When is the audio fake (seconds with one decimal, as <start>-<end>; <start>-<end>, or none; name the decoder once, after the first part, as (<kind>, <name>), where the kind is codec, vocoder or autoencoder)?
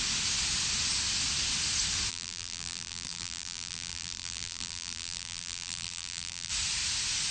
2.1-6.5 (vocoder, BigVGAN v2)